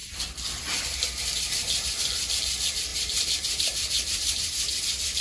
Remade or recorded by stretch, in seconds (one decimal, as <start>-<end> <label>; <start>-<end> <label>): 0.0-2.9 recorded; 2.9-4.8 remade; 4.8-5.2 recorded